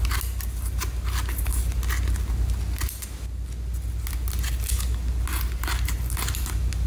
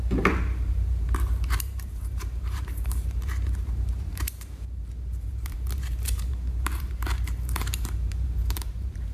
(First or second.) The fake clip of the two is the second